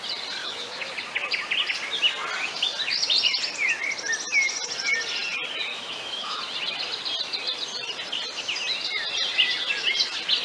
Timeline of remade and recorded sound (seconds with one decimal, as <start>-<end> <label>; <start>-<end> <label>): 0.0-0.4 recorded; 0.4-0.9 remade; 0.9-5.7 recorded; 5.7-6.4 remade; 6.4-10.4 recorded